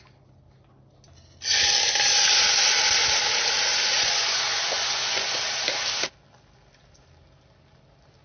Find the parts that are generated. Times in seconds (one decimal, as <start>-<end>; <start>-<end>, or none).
3.7-5.4